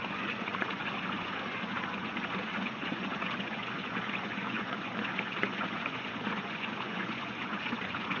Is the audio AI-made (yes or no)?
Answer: yes